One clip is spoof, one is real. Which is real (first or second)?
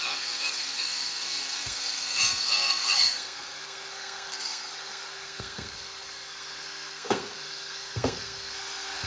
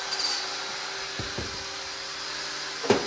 second